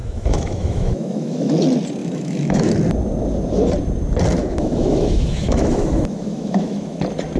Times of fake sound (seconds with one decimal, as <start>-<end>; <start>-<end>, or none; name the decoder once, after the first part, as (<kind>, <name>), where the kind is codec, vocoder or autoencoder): 0.0-1.5 (autoencoder, DAC-VAE); 2.0-2.7; 4.4-7.0